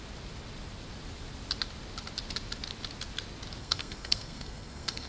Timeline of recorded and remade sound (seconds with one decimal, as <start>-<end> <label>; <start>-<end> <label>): 0.0-3.6 recorded; 3.6-5.1 remade